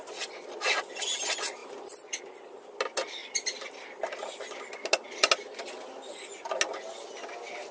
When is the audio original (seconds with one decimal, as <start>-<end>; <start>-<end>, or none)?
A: 0.0-7.7